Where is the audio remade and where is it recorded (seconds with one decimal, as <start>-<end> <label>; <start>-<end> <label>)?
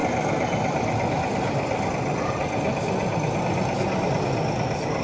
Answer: 0.0-2.3 remade; 2.3-3.0 recorded; 3.0-4.3 remade; 4.3-5.0 recorded